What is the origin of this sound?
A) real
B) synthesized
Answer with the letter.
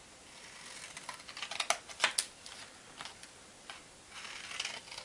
A